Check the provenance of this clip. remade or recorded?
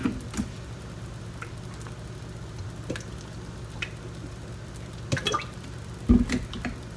recorded